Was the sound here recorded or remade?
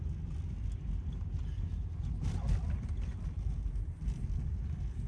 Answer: recorded